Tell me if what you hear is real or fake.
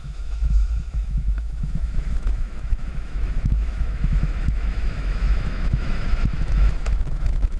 fake